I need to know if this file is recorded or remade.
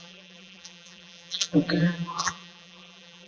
remade